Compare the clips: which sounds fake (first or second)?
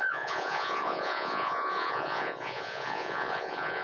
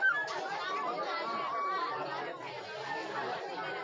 first